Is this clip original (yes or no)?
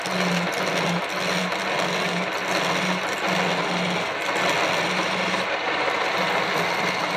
yes